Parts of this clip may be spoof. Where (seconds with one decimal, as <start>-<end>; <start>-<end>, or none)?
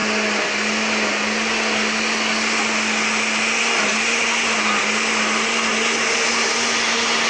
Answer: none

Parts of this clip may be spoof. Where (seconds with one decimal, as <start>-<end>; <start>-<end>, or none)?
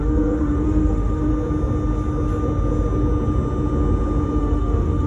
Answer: 0.0-1.3; 4.4-5.1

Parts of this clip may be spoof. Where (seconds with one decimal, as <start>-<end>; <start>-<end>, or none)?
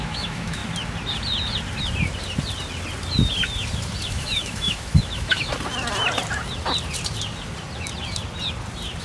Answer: 0.0-0.6; 4.1-5.5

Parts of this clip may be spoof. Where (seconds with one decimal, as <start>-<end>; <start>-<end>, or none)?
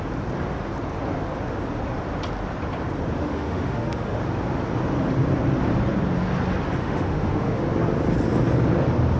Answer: 3.2-4.2; 6.8-7.6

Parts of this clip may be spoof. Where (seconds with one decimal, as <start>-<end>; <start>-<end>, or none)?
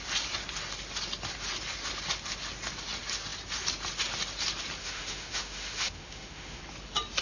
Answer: 4.8-6.6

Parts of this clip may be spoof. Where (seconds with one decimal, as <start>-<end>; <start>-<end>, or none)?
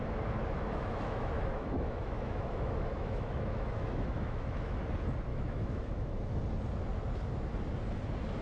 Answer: 0.4-4.8; 5.3-6.4